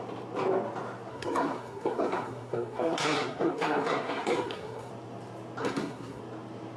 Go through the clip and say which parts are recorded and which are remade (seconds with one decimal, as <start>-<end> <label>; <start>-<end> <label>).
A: 0.0-1.1 recorded; 1.1-4.9 remade; 4.9-5.6 recorded; 5.6-6.2 remade; 6.2-6.8 recorded